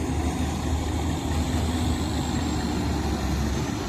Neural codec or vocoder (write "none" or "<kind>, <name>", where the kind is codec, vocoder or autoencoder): none